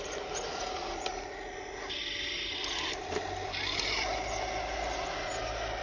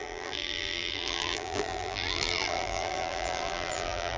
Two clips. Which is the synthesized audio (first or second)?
second